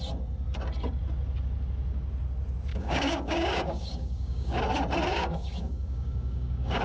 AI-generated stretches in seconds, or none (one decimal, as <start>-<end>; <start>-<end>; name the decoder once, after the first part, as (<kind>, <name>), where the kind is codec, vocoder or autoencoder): 2.7-4.6 (codec, DAC); 5.1-6.8